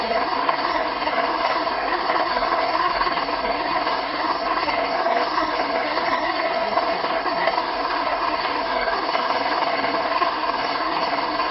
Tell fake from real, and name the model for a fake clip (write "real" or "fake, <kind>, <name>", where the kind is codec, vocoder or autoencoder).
fake, codec, SNAC